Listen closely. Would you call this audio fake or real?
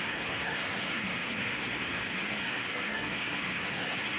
fake